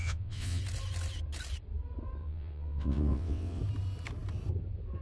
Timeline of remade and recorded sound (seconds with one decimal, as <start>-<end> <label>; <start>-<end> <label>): 0.0-0.6 remade; 0.6-2.2 recorded; 2.2-3.6 remade; 3.6-5.0 recorded